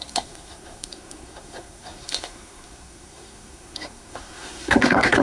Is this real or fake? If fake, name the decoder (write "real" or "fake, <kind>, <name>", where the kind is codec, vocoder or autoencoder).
fake, codec, SNAC